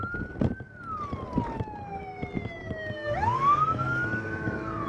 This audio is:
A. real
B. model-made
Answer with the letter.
A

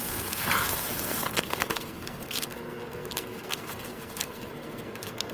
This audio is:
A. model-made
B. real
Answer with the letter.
A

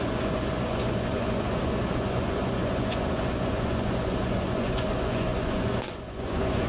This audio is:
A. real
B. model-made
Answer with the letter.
B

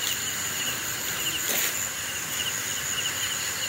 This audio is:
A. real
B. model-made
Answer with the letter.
A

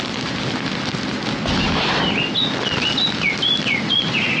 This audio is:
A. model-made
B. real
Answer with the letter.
B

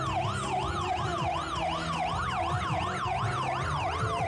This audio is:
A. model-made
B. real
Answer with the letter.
B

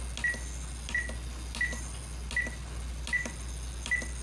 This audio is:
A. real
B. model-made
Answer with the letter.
A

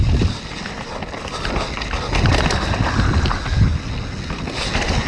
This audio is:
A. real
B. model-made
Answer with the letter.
A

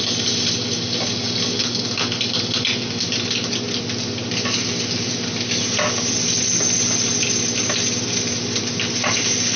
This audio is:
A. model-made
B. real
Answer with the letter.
B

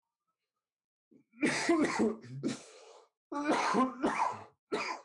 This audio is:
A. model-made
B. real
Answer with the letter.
A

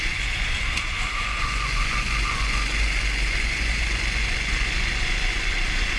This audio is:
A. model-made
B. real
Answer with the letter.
A